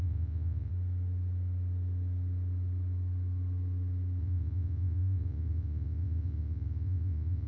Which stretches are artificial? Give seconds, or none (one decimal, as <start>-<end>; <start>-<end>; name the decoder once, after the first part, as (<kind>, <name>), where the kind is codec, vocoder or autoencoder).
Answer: 0.0-0.7 (vocoder, Vocos); 4.2-7.5